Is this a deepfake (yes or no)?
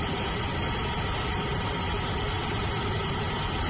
no